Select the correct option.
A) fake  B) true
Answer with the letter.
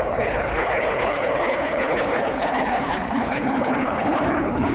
A